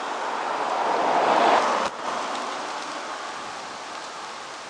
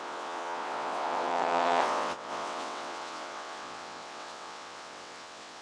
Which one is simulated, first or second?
second